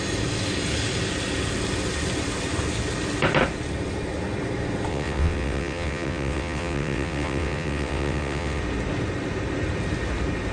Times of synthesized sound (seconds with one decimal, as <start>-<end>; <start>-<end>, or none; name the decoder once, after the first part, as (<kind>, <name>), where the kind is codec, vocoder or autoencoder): 4.9-8.6 (vocoder, WaveNeXt)